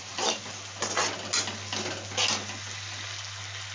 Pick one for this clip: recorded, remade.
recorded